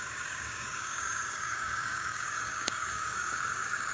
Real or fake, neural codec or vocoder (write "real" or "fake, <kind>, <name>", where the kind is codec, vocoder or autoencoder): fake, codec, DAC